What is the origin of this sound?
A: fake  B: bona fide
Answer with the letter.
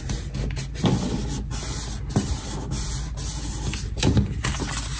B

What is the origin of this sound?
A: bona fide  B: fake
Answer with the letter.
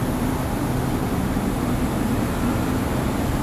A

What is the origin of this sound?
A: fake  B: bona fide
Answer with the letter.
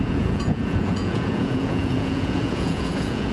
A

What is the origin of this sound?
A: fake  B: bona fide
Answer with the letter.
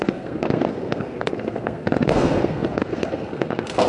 A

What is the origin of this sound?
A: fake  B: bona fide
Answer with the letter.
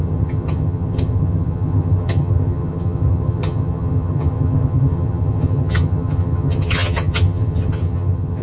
A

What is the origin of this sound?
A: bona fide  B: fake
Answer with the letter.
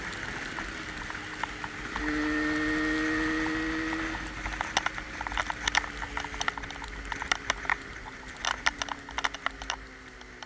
A